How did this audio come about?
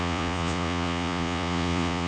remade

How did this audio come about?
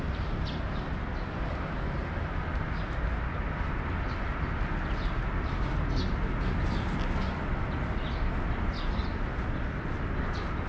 recorded